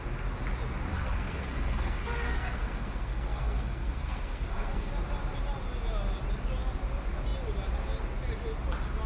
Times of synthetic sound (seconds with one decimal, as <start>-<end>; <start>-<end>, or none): 0.9-4.9